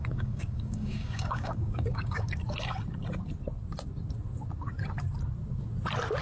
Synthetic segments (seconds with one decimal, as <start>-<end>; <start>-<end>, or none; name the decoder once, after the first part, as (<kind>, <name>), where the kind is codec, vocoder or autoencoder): 0.0-2.4 (codec, DAC)

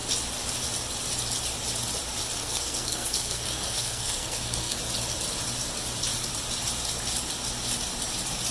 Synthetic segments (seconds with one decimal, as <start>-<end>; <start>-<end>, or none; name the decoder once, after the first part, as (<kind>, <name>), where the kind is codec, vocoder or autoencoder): 2.4-4.8 (codec, SNAC)

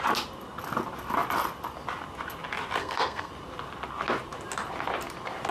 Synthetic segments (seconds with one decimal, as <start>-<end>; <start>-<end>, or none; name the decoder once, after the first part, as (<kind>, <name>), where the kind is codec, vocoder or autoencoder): 2.8-3.3 (codec, SNAC)

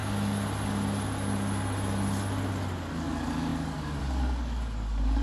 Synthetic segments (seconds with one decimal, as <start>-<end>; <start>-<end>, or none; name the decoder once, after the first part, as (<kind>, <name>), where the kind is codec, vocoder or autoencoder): 2.9-5.2 (codec, DAC)

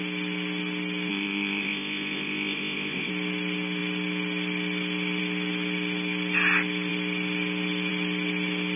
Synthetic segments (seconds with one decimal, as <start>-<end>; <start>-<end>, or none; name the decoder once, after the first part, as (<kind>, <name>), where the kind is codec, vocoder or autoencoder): 1.1-3.1 (codec, ZipCodec)

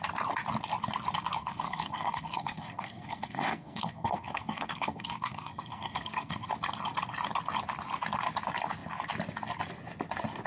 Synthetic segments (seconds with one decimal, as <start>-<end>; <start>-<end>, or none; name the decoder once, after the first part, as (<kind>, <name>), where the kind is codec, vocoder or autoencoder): 1.4-6.5 (codec, SNAC)

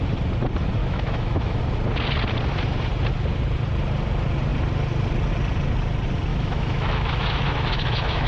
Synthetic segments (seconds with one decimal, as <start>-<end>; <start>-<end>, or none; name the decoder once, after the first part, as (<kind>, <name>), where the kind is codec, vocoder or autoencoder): 0.8-1.6 (autoencoder, DAC-VAE); 6.3-8.3

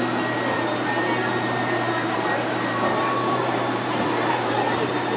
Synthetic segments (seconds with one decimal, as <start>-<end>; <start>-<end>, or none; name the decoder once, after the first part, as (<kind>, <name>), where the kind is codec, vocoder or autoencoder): 2.0-5.2 (vocoder, BigVGAN v2)